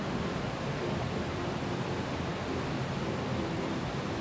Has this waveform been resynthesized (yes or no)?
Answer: no